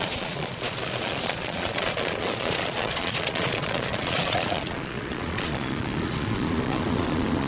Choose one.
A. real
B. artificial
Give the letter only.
B